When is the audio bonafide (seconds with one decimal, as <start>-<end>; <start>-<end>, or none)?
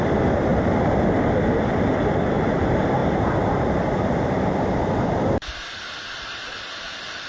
0.5-1.0